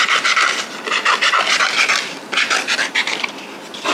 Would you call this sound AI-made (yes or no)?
no